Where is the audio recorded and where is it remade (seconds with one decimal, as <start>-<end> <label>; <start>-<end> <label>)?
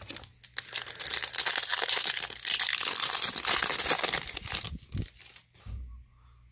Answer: 0.0-6.5 recorded